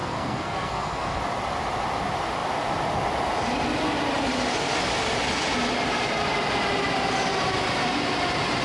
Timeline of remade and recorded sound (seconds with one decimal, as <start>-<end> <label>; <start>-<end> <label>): 0.0-1.2 remade; 1.2-8.6 recorded